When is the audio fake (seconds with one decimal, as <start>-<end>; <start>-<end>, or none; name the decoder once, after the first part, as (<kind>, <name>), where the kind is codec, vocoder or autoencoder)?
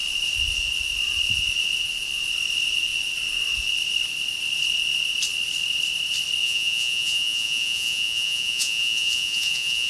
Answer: 6.4-9.9 (vocoder, Vocos)